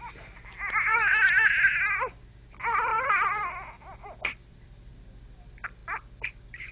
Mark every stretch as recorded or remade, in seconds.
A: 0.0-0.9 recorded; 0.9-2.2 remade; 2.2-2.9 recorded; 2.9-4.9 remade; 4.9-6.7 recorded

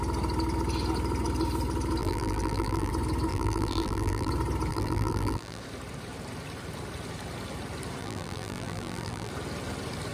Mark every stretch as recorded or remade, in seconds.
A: 0.0-2.0 recorded; 2.0-2.9 remade; 2.9-3.3 recorded; 3.3-4.3 remade; 4.3-4.7 recorded; 4.7-5.6 remade; 5.6-8.0 recorded; 8.0-9.3 remade; 9.3-10.1 recorded

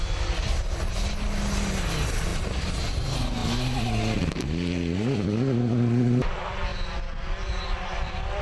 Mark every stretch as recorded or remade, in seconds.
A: 0.0-8.4 recorded

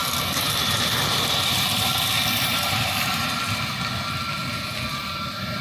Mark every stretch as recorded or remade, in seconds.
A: 0.0-3.4 remade; 3.4-4.4 recorded; 4.4-5.0 remade; 5.0-5.6 recorded

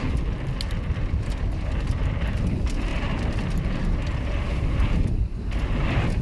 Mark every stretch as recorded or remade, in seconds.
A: 0.0-2.9 recorded; 2.9-6.2 remade

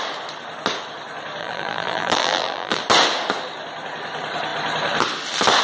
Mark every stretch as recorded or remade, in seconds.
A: 0.0-1.4 recorded; 1.4-2.8 remade; 2.8-5.6 recorded

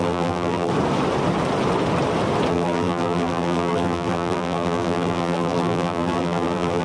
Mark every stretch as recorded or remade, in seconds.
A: 0.0-0.7 remade; 0.7-2.5 recorded; 2.5-6.8 remade